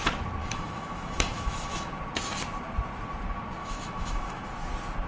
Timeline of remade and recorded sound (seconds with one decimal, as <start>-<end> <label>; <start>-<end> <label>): 0.0-0.4 recorded; 0.4-2.0 remade; 2.0-3.6 recorded; 3.6-4.5 remade; 4.5-5.1 recorded